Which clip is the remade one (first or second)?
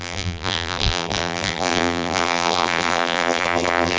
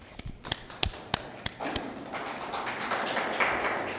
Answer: first